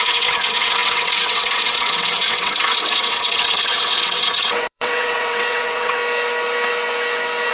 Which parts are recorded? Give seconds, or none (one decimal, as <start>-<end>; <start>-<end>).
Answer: 6.0-7.5